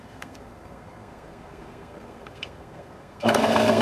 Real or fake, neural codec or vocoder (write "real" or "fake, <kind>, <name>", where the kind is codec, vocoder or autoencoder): fake, codec, SNAC